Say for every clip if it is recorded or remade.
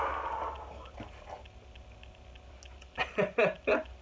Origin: recorded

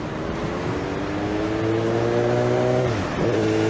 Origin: recorded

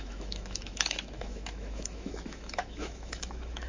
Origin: remade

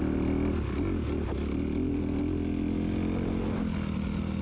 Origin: recorded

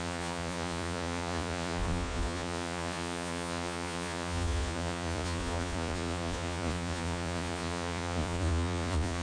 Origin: remade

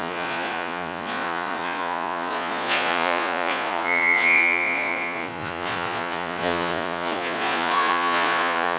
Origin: remade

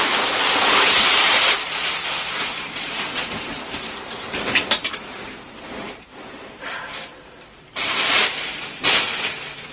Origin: remade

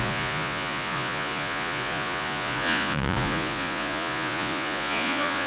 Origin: remade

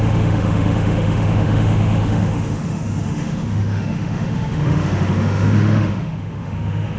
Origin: remade